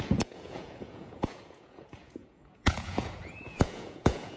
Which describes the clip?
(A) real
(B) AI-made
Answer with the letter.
B